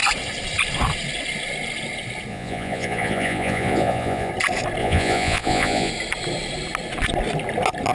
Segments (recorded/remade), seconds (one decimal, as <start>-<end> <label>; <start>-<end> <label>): 0.0-2.3 recorded; 2.3-4.3 remade; 4.3-4.8 recorded; 4.8-5.9 remade; 5.9-7.9 recorded